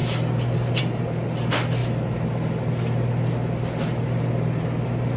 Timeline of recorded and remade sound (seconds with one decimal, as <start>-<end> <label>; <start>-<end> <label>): 0.0-5.2 recorded